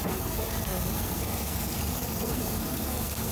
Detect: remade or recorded remade